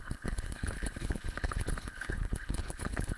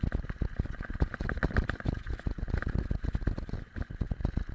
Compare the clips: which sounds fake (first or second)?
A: first